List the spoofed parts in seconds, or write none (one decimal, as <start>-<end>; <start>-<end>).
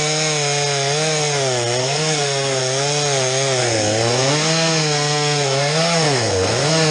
1.8-2.6; 3.6-6.9